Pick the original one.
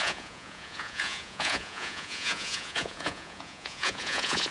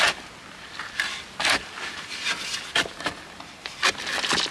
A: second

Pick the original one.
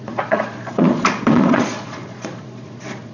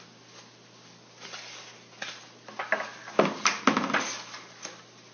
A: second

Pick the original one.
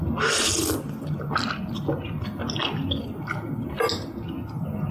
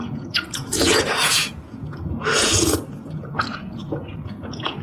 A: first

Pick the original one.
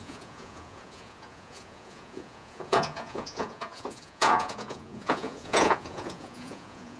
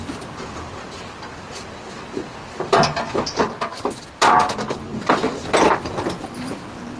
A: second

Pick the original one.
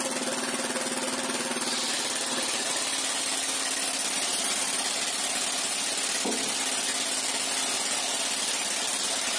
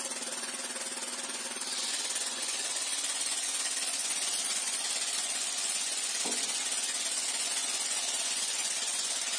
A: first